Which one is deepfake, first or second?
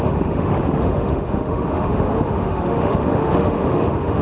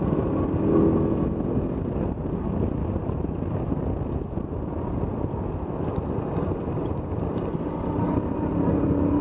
first